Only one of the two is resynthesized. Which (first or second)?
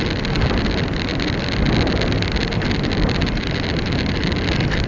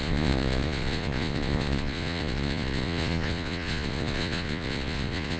second